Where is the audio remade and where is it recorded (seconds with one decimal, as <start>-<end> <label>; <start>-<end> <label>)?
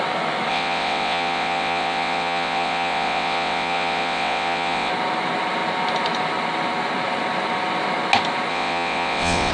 0.0-0.5 recorded; 0.5-4.9 remade; 4.9-8.5 recorded; 8.5-9.5 remade